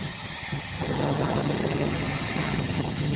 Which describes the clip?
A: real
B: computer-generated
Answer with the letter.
B